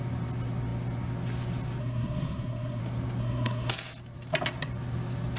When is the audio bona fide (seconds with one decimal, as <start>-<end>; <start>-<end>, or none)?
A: 0.0-1.8; 2.8-3.2; 3.7-5.4

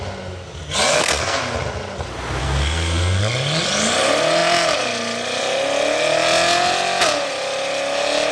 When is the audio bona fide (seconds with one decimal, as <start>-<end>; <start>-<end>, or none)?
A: 0.0-0.9; 1.4-2.4; 3.2-8.3

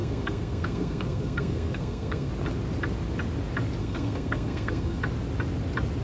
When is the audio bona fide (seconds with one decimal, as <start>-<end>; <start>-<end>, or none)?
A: 2.3-3.8; 5.0-6.0

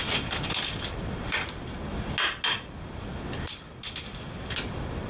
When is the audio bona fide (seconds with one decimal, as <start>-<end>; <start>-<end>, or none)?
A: 0.0-5.1